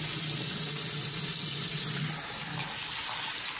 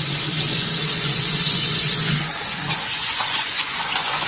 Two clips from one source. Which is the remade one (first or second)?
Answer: second